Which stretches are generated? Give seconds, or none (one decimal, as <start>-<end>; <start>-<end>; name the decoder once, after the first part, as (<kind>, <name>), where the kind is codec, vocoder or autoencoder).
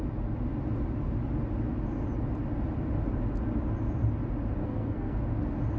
4.6-5.2 (codec, SNAC)